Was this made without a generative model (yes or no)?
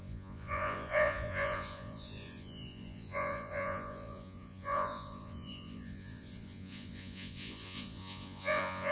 no